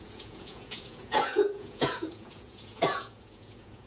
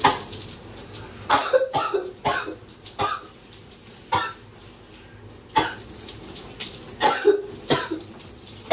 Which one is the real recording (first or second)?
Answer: second